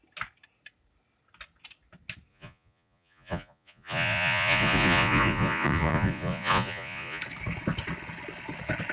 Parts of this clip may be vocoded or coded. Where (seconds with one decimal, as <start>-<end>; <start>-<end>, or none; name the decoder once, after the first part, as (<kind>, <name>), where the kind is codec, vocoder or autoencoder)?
2.3-7.2 (vocoder, Vocos)